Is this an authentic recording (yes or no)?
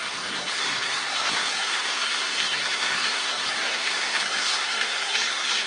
no